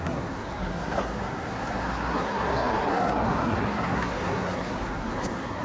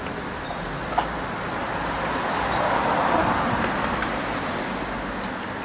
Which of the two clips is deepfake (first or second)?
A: first